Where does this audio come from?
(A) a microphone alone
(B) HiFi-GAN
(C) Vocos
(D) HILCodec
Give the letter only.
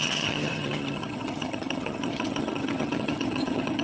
B